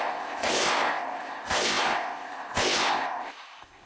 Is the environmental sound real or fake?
fake